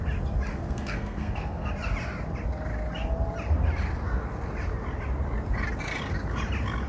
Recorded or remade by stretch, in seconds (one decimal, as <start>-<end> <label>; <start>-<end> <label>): 0.0-0.5 recorded; 0.5-1.7 remade; 1.7-6.9 recorded